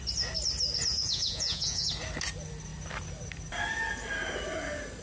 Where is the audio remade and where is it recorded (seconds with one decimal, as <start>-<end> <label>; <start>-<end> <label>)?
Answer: 0.0-0.9 recorded; 0.9-1.9 remade; 1.9-5.0 recorded